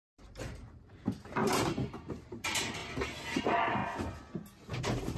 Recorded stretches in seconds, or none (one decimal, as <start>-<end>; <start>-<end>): 2.8-3.4; 3.8-4.8